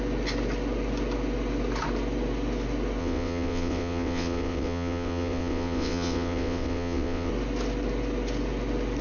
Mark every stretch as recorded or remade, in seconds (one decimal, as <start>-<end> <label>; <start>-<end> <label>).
0.0-3.0 recorded; 3.0-7.3 remade; 7.3-9.0 recorded